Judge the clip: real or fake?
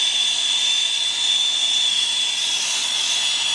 real